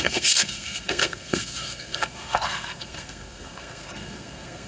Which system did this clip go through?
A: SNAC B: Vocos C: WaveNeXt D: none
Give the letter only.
A